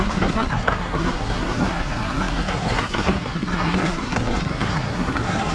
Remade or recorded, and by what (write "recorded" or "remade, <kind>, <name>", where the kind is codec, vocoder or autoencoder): remade, codec, SNAC